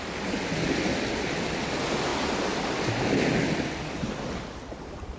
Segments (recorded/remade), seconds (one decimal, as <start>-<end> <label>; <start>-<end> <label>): 0.0-5.2 recorded